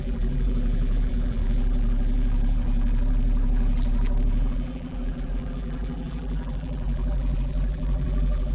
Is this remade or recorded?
remade